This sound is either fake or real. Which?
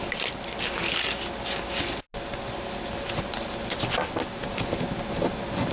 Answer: real